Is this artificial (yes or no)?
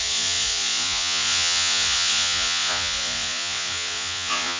yes